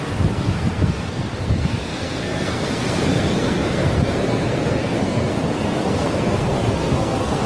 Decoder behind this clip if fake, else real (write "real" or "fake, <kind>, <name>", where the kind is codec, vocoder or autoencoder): fake, codec, SNAC